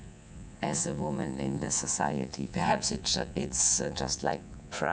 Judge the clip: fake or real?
fake